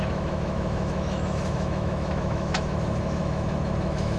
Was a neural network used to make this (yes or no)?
yes